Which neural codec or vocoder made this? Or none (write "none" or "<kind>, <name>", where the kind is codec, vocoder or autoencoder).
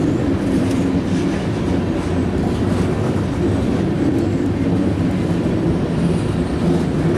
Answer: none